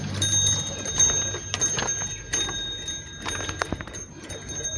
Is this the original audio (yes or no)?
yes